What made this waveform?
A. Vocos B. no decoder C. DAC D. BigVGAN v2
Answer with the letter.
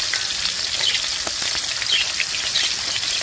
B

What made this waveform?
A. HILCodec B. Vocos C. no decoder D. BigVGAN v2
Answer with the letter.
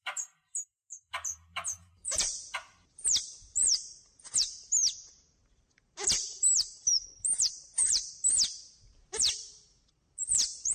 D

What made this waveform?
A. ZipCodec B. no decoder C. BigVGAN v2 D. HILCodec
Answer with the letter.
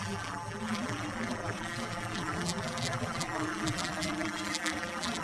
C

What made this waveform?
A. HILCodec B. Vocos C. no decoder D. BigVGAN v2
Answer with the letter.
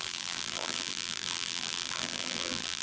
D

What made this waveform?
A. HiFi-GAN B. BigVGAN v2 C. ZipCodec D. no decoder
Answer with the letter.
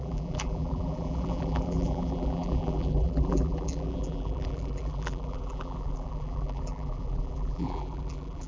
B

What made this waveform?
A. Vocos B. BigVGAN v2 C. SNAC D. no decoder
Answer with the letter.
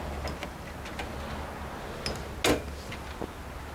D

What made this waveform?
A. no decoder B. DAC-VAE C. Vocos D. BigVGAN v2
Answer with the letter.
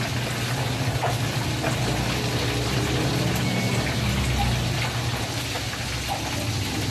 A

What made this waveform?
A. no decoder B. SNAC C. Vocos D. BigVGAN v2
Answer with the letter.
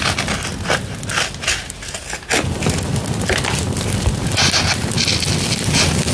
A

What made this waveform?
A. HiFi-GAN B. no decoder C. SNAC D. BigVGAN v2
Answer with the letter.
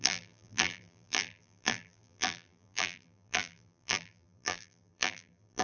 D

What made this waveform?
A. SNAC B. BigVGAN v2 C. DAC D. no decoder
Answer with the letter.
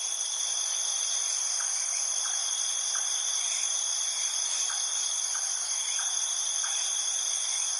D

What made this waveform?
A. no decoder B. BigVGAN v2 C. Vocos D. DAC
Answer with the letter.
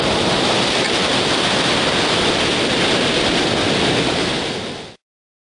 A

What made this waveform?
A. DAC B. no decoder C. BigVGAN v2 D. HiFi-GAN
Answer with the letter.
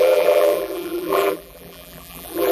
C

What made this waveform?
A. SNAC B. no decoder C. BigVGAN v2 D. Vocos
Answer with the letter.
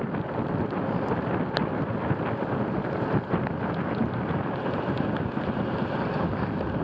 B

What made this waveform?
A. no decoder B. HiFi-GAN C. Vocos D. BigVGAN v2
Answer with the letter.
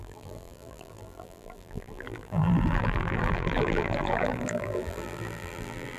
D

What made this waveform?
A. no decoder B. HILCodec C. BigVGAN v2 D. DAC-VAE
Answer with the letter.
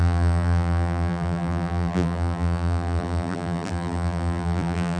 C